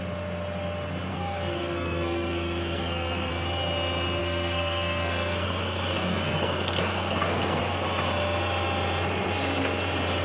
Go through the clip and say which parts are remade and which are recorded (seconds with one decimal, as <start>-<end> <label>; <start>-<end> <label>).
0.0-1.1 recorded; 1.1-3.3 remade; 3.3-4.2 recorded; 4.2-7.6 remade; 7.6-10.2 recorded